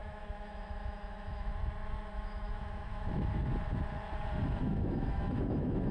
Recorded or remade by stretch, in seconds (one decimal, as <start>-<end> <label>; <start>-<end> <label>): 0.0-1.5 remade; 1.5-2.1 recorded; 2.1-3.4 remade; 3.4-4.6 recorded; 4.6-5.9 remade